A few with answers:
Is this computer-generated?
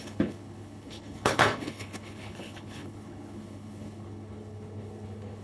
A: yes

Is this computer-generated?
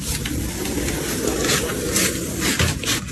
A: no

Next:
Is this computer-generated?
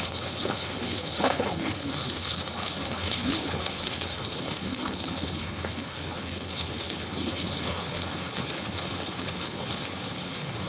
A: yes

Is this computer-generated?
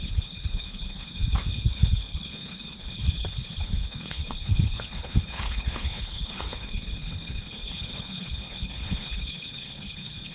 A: yes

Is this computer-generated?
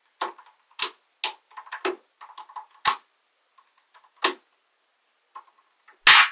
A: no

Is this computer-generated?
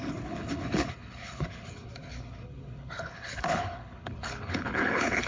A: yes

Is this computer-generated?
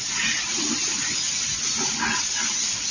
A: no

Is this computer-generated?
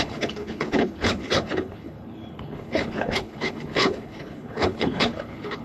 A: yes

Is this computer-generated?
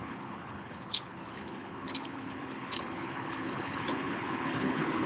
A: yes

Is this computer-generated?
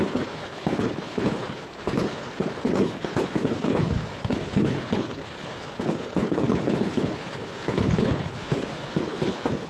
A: yes